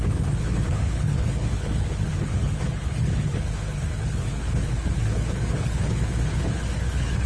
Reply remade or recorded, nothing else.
remade